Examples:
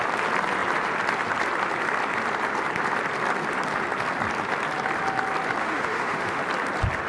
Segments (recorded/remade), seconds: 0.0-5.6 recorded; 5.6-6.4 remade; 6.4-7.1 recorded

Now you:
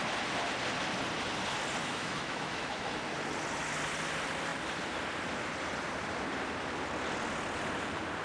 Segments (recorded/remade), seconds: 0.0-1.8 recorded; 1.8-3.0 remade; 3.0-8.2 recorded

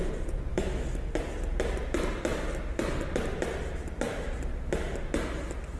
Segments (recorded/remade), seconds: 0.0-0.5 recorded; 0.5-1.1 remade; 1.1-5.8 recorded

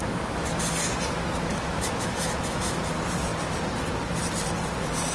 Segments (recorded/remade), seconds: 0.0-1.5 recorded; 1.5-2.8 remade; 2.8-5.1 recorded

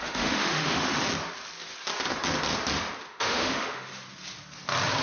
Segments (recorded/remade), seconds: 0.0-0.9 remade; 0.9-3.1 recorded; 3.1-3.9 remade; 3.9-5.0 recorded

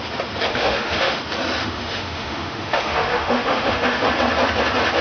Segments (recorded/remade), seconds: 0.0-0.5 recorded; 0.5-1.2 remade; 1.2-1.6 recorded; 1.6-4.1 remade; 4.1-5.0 recorded

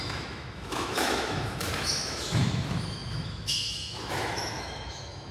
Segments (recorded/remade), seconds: 0.0-5.3 remade